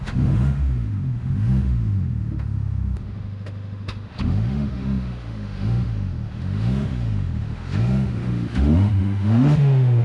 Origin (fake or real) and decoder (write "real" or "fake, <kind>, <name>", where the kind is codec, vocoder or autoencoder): fake, autoencoder, DAC-VAE